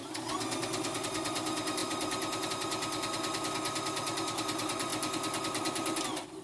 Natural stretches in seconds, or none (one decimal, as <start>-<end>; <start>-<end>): 0.0-6.4